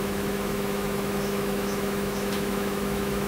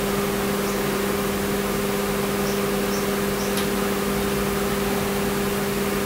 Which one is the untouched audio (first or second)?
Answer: second